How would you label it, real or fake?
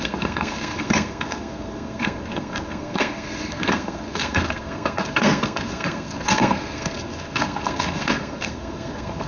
fake